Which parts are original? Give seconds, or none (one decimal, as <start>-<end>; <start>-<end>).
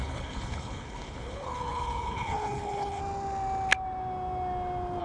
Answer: 3.0-5.0